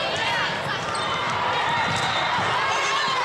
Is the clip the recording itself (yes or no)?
yes